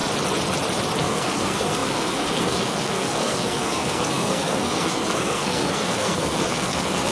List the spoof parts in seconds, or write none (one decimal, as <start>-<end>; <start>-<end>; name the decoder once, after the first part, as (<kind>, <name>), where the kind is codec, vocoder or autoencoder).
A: 1.0-7.1 (codec, SNAC)